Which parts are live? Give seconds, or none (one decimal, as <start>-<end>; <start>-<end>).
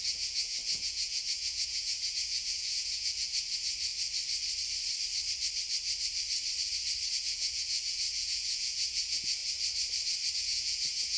3.9-7.1; 9.4-10.3